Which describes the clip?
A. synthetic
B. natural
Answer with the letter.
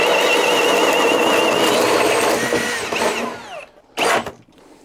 B